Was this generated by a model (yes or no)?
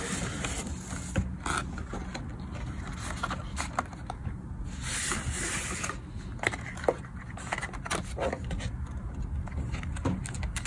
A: no